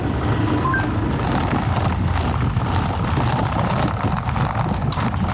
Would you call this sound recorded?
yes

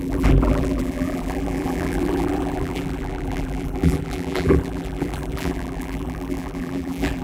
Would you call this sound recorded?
no